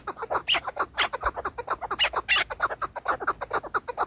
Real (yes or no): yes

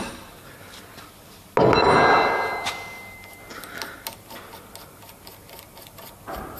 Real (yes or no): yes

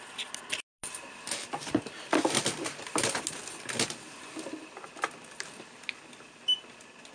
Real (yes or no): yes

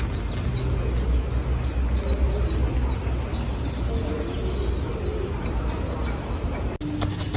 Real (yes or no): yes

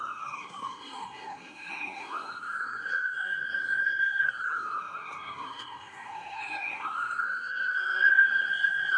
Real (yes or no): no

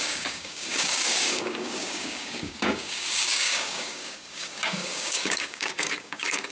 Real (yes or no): no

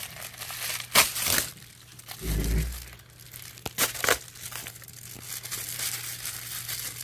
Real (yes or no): yes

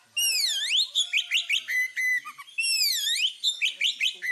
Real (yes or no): yes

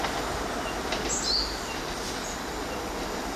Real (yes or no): yes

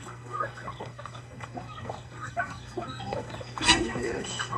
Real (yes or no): no